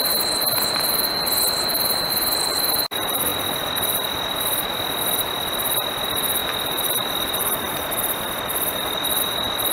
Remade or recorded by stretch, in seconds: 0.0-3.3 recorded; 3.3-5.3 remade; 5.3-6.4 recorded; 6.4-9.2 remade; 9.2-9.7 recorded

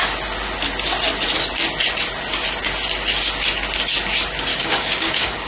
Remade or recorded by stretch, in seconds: 0.0-4.5 recorded; 4.5-5.5 remade

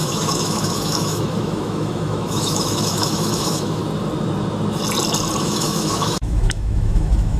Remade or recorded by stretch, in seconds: 0.0-3.8 remade; 3.8-5.4 recorded; 5.4-7.4 remade

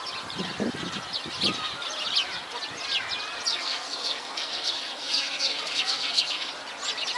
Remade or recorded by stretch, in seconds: 0.0-3.5 recorded; 3.5-6.5 remade; 6.5-7.2 recorded

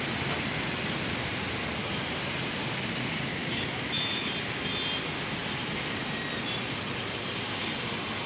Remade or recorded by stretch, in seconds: 0.0-3.3 recorded; 3.3-4.3 remade; 4.3-8.3 recorded